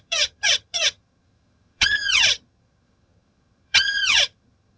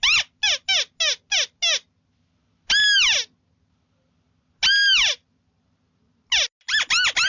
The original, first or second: second